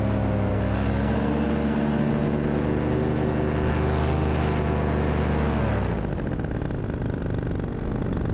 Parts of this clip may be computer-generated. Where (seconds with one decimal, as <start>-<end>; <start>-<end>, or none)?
0.5-2.1